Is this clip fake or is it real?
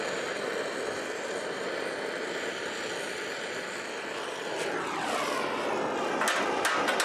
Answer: real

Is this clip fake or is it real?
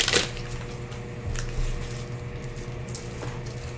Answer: real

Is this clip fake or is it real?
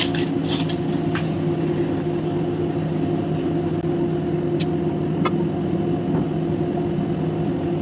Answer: real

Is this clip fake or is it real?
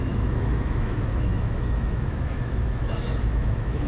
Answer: fake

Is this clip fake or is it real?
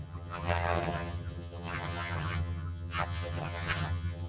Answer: fake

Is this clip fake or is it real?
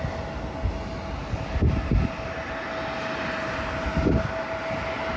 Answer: real